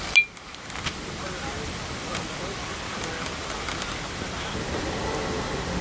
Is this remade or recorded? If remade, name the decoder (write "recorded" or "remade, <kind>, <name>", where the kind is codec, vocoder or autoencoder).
recorded